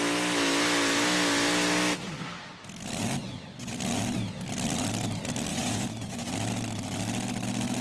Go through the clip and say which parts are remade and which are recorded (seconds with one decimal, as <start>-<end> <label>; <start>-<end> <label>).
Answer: 0.0-3.2 recorded; 3.2-3.7 remade; 3.7-5.5 recorded; 5.5-6.3 remade; 6.3-7.8 recorded